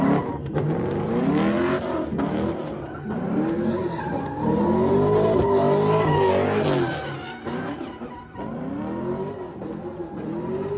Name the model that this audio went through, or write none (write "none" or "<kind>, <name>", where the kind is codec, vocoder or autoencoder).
none